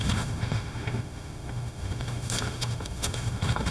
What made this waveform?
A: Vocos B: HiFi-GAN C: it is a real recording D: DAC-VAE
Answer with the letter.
D